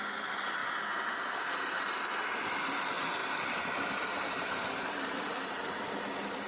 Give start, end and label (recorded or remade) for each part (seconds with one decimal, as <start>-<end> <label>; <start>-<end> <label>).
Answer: 0.0-3.2 recorded; 3.2-6.0 remade; 6.0-6.5 recorded